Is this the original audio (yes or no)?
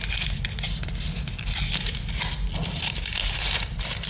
yes